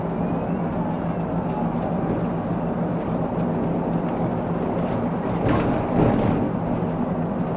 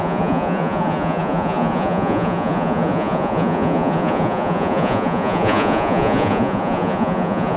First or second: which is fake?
second